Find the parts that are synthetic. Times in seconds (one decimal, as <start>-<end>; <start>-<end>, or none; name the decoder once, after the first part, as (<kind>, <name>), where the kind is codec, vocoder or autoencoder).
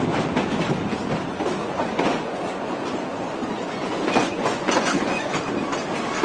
1.6-5.3 (vocoder, Vocos)